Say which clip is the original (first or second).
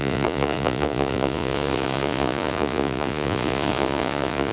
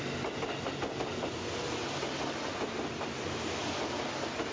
second